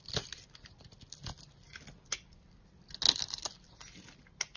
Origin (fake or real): real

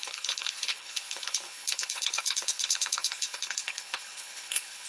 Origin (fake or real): fake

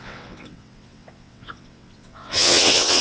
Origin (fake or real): fake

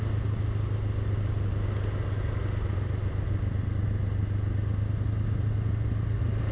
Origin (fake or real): real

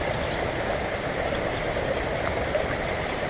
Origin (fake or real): fake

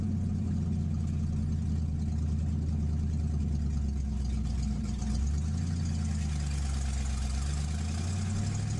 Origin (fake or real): real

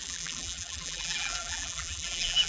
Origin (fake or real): fake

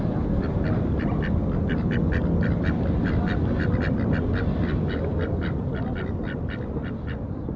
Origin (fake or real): real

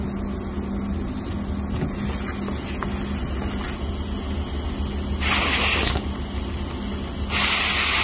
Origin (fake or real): real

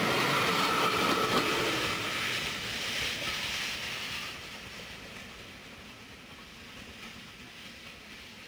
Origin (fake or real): real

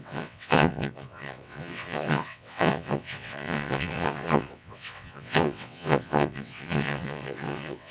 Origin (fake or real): fake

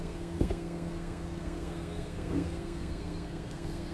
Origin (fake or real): fake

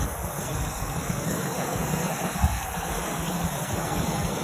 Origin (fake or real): fake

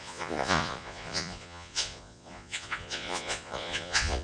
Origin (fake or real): fake